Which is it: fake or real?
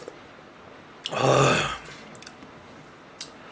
real